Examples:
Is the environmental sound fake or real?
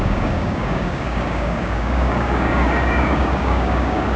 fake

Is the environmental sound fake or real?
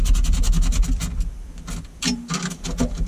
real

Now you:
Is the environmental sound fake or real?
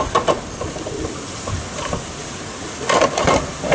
real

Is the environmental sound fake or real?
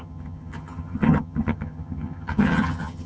fake